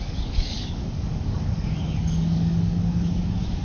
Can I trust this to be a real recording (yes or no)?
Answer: no